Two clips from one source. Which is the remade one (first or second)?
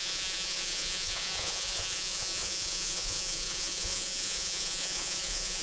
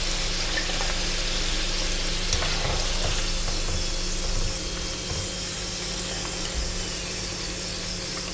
first